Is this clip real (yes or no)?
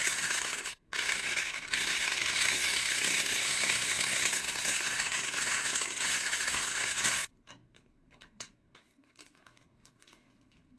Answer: no